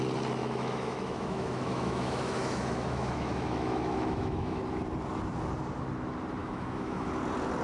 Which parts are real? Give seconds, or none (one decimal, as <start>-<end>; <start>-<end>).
0.0-0.4; 4.6-6.4; 7.1-7.6